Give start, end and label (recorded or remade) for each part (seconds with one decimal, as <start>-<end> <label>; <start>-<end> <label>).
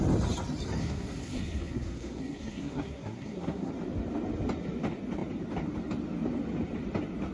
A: 0.0-0.8 recorded; 0.8-3.7 remade; 3.7-7.3 recorded